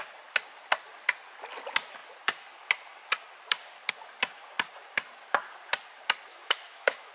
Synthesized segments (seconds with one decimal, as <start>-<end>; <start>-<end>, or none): 6.3-7.1